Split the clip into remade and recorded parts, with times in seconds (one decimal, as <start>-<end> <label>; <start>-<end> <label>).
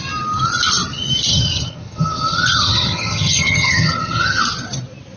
0.0-1.3 recorded; 1.3-4.4 remade; 4.4-5.2 recorded